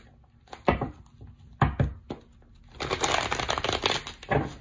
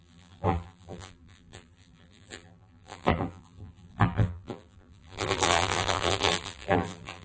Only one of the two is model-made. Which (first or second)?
second